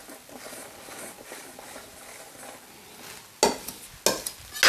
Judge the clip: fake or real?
real